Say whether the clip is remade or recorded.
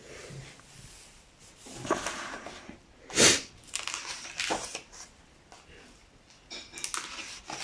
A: recorded